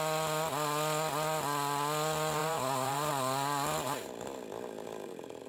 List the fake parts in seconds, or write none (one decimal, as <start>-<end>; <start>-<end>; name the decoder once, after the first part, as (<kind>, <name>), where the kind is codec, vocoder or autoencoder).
2.4-3.1 (vocoder, BigVGAN v2)